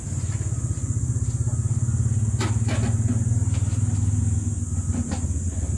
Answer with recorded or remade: recorded